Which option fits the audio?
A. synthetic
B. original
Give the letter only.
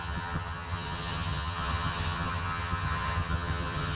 A